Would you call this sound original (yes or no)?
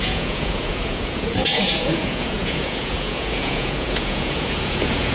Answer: no